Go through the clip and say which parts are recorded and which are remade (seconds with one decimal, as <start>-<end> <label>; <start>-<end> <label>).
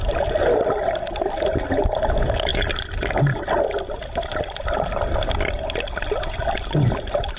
0.0-7.4 remade